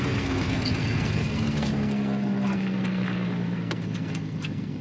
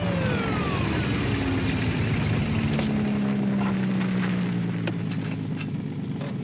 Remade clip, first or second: first